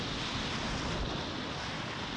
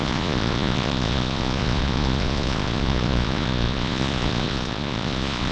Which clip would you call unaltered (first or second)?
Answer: first